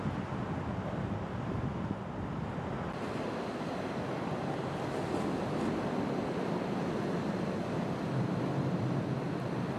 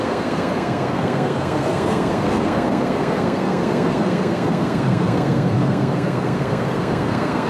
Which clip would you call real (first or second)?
first